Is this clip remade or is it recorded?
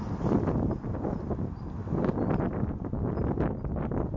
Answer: recorded